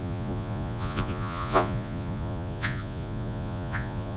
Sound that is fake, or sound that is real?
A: fake